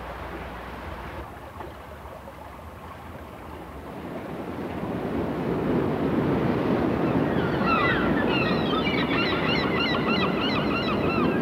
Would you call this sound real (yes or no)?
yes